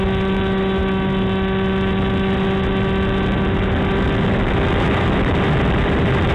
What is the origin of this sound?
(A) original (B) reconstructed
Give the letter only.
A